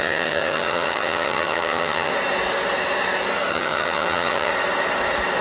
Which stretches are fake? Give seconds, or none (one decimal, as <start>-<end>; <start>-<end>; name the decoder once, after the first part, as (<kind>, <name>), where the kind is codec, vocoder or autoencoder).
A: 0.0-2.1 (vocoder, HiFi-GAN); 3.5-4.5